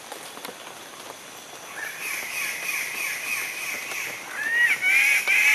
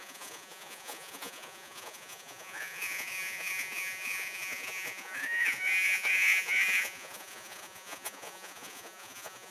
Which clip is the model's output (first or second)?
second